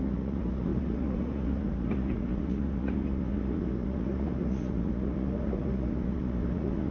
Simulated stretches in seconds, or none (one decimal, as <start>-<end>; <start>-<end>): 0.0-6.9